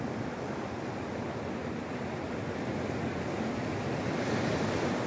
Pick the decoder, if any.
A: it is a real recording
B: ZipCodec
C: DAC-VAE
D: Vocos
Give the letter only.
A